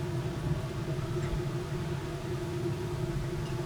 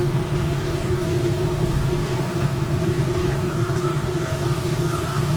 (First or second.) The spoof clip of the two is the second